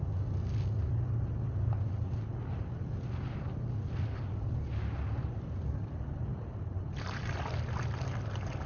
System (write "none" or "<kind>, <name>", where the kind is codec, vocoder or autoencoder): none